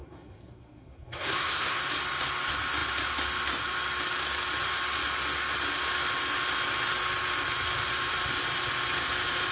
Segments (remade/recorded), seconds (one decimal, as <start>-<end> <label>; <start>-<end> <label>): 0.0-1.8 remade; 1.8-9.5 recorded